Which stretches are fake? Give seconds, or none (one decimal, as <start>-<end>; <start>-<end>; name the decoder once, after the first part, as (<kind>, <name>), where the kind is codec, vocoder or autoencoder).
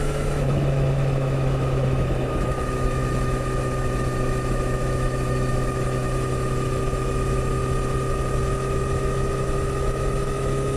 0.0-7.6 (autoencoder, DAC-VAE); 8.5-10.8